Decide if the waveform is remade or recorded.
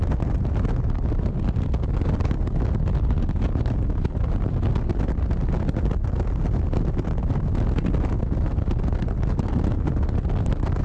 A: recorded